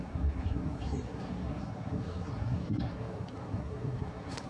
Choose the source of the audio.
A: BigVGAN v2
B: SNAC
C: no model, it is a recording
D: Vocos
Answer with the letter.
B